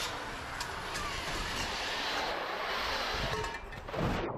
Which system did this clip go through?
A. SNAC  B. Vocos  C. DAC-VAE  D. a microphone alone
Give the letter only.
D